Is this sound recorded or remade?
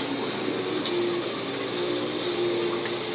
recorded